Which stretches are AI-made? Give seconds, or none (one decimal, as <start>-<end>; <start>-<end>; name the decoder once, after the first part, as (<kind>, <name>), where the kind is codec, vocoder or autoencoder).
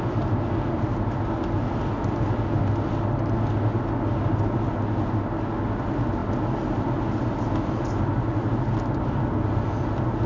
none